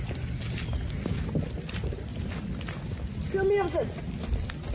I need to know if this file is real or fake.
real